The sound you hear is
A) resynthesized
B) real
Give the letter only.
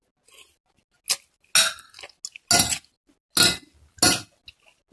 B